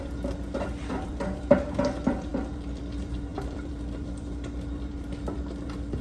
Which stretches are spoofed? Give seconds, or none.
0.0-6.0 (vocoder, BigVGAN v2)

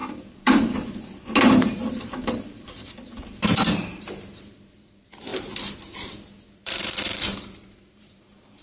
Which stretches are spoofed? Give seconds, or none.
0.0-5.3 (vocoder, BigVGAN v2); 6.6-8.6

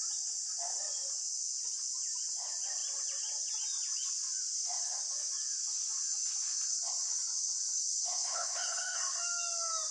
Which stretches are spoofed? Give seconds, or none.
6.7-9.0 (codec, HILCodec)

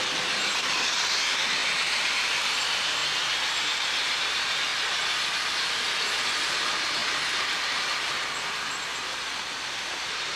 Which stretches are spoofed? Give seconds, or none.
0.0-3.0 (vocoder, BigVGAN v2); 3.6-4.7; 5.5-10.4

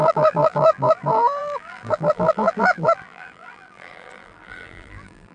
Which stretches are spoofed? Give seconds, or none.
0.0-5.3 (vocoder, BigVGAN v2)

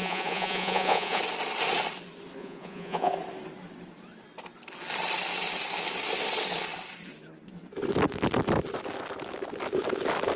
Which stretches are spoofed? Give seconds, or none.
0.0-1.2 (vocoder, Vocos); 2.4-3.1

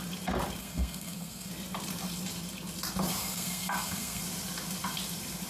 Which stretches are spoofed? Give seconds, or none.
0.6-1.5 (codec, SNAC); 3.2-4.2

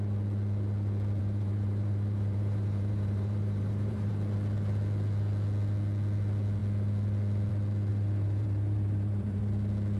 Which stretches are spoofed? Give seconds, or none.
1.2-4.1 (vocoder, BigVGAN v2); 7.9-9.4